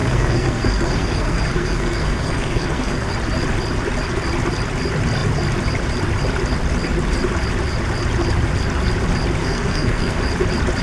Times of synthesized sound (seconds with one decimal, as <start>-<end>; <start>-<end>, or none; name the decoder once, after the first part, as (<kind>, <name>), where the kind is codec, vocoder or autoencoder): 0.0-3.1 (codec, SNAC); 9.4-10.2

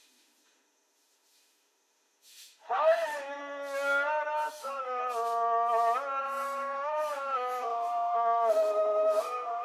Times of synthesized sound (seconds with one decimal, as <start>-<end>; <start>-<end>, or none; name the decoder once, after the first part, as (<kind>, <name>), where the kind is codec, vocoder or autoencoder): 0.0-3.4 (autoencoder, DAC-VAE); 4.5-5.0; 6.2-9.6

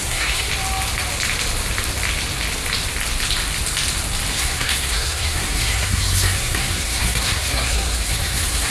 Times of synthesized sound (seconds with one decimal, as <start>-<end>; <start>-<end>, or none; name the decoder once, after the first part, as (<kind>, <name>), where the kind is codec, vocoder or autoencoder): 0.0-0.5 (codec, SNAC); 4.3-8.7

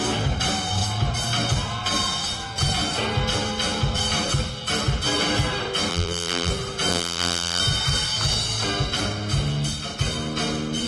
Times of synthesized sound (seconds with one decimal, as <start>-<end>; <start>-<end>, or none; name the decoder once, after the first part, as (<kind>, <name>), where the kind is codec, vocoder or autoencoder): 5.9-6.5 (vocoder, BigVGAN v2); 6.9-7.6

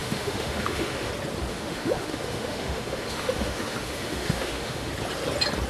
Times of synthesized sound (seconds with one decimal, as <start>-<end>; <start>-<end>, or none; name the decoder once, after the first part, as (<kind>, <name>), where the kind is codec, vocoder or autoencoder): 0.0-1.1 (autoencoder, DAC-VAE); 1.5-4.9

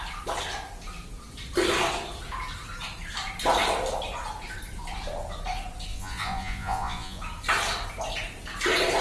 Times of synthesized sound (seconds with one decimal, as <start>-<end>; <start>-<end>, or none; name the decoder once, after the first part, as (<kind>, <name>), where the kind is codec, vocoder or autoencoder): 5.9-7.2 (vocoder, Vocos)

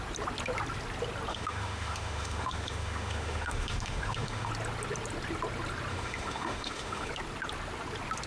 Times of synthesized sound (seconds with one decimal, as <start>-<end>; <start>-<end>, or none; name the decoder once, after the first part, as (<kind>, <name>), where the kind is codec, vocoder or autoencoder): 1.3-4.5 (autoencoder, DAC-VAE); 5.9-7.1